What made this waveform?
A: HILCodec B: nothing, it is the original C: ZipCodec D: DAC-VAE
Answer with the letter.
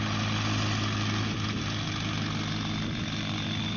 B